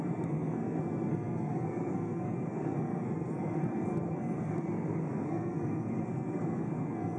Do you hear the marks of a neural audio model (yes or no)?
yes